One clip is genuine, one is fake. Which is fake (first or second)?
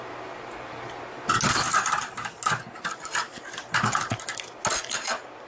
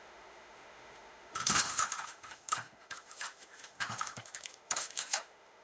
second